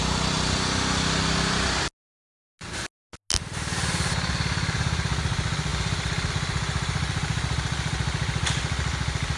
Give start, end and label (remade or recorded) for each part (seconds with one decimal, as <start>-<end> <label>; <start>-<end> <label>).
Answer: 0.0-9.4 recorded